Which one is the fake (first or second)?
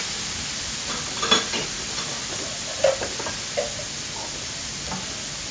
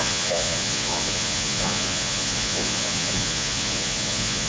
second